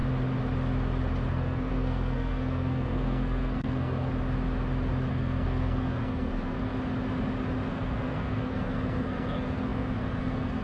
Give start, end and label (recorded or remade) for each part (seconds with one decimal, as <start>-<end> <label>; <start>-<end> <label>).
0.0-1.3 recorded; 1.3-4.1 remade; 4.1-5.1 recorded; 5.1-6.7 remade; 6.7-7.7 recorded; 7.7-10.6 remade

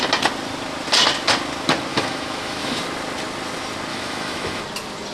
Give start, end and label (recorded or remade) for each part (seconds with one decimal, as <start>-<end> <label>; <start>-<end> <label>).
0.0-1.9 recorded; 1.9-2.8 remade; 2.8-3.9 recorded; 3.9-4.6 remade; 4.6-5.1 recorded

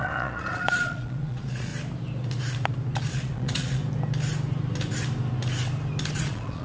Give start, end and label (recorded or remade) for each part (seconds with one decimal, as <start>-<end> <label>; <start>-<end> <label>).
0.0-1.7 remade; 1.7-3.1 recorded; 3.1-3.8 remade; 3.8-6.1 recorded; 6.1-6.6 remade